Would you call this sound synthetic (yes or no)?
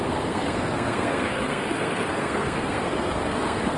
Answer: yes